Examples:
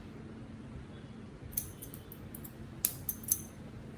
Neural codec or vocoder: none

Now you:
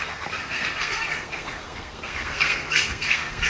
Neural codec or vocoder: codec, SNAC